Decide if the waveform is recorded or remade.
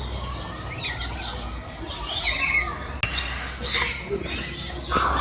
recorded